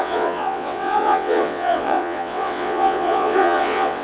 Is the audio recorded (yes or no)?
no